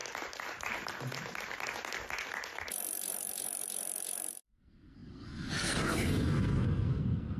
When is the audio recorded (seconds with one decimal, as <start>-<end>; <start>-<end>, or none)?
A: 0.0-4.4